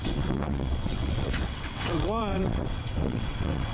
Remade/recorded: remade